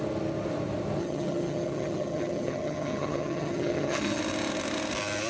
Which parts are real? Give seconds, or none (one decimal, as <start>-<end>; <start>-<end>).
0.0-1.0; 4.2-5.3

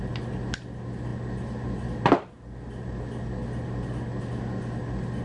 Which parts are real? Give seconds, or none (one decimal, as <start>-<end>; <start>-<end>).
0.0-5.2

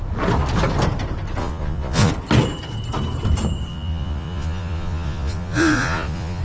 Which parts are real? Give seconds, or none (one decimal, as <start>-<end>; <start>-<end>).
0.0-1.4; 2.1-3.7

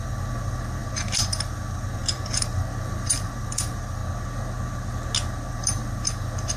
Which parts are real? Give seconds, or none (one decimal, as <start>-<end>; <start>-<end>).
4.0-5.5

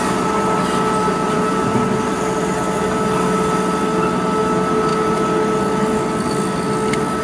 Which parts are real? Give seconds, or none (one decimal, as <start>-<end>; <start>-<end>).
0.0-1.0; 2.1-7.2

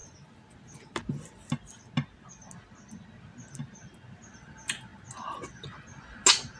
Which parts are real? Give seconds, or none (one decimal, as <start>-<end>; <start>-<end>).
0.0-6.6